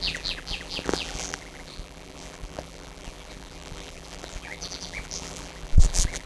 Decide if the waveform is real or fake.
fake